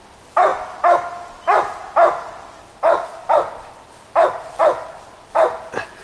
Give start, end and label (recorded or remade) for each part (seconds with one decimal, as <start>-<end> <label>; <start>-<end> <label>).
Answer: 0.0-6.0 recorded